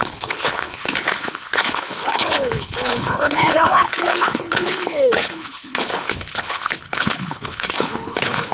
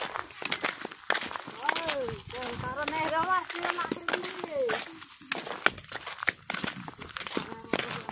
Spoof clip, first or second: first